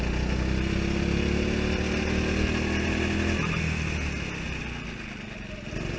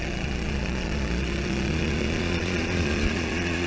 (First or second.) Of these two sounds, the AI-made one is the second